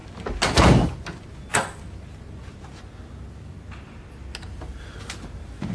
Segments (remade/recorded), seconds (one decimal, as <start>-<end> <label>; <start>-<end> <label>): 0.0-5.7 recorded